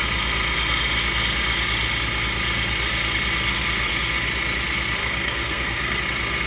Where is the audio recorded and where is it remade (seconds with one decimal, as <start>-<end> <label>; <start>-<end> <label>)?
0.0-5.0 recorded; 5.0-6.0 remade; 6.0-6.5 recorded